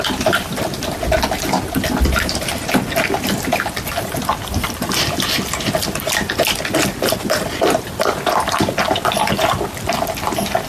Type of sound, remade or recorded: recorded